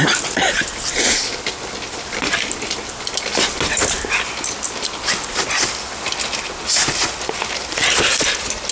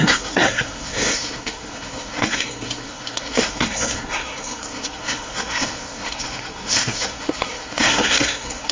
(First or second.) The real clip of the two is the first